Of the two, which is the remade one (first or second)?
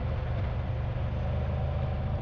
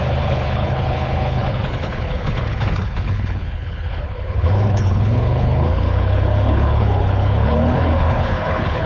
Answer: second